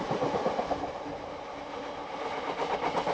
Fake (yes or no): no